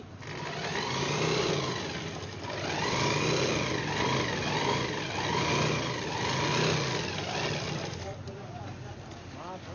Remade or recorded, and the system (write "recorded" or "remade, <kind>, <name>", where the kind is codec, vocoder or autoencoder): recorded